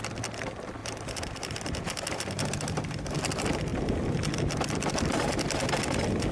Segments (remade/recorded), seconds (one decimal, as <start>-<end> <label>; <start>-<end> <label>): 0.0-0.8 recorded; 0.8-3.2 remade; 3.2-6.3 recorded